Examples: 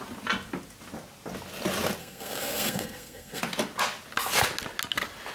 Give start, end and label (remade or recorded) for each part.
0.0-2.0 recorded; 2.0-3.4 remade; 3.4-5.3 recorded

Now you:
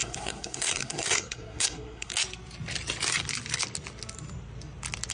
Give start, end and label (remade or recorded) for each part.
0.0-2.1 remade; 2.1-5.1 recorded

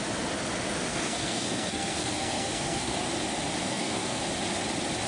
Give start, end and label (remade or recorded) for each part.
0.0-0.9 recorded; 0.9-3.0 remade; 3.0-3.6 recorded; 3.6-4.2 remade; 4.2-5.1 recorded